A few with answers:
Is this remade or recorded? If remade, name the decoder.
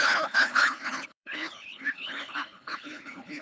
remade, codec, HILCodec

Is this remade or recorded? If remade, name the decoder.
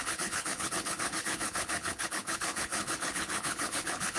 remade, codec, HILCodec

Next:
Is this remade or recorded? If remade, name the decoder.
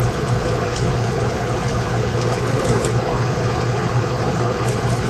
remade, codec, HILCodec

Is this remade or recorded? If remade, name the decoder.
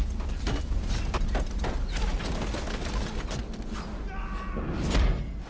recorded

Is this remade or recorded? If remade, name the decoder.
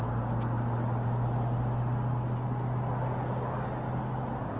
recorded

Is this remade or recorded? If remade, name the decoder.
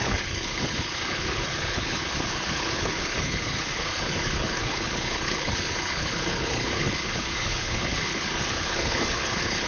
remade, codec, HILCodec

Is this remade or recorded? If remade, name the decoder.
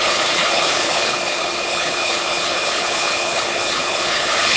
remade, codec, HILCodec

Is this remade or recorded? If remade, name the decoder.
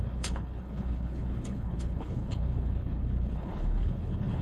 remade, codec, HILCodec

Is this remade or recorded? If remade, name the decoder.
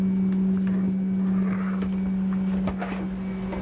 recorded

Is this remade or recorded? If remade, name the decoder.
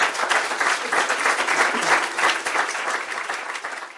recorded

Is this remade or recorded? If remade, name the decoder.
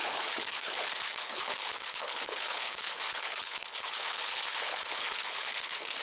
remade, codec, HILCodec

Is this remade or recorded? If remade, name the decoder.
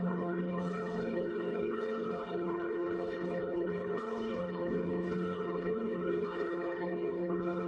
remade, codec, HILCodec